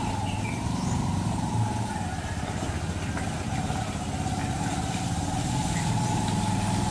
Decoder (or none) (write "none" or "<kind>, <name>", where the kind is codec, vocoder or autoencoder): none